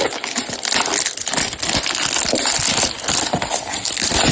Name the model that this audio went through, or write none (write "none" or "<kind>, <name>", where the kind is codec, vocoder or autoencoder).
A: none